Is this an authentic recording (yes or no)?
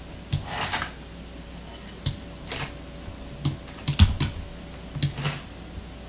yes